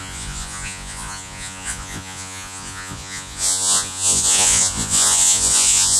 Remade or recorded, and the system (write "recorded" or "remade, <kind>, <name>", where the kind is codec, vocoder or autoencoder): remade, vocoder, Vocos